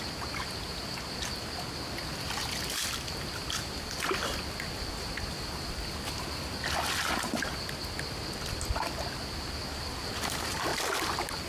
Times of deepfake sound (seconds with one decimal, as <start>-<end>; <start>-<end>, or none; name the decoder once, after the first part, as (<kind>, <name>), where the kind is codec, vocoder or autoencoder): none